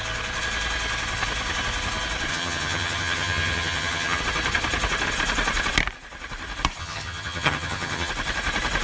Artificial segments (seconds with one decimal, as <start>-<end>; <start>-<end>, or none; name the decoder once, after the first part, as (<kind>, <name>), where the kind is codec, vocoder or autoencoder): 2.3-4.2 (vocoder, HiFi-GAN); 6.8-8.1